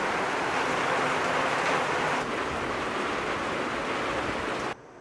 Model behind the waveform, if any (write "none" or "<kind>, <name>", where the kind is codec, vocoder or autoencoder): none